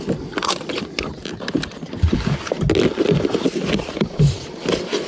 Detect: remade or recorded recorded